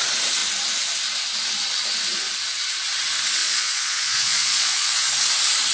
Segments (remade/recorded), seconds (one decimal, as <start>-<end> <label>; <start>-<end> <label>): 0.0-3.4 recorded; 3.4-5.1 remade; 5.1-5.7 recorded